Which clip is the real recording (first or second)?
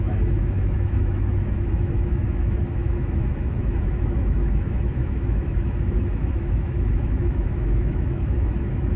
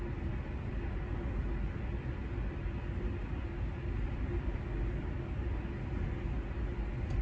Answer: second